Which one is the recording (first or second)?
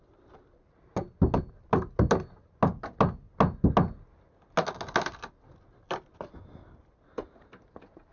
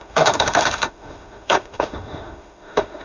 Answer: first